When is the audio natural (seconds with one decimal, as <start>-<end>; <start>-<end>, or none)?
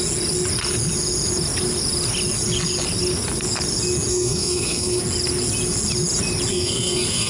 0.0-4.1; 5.0-6.5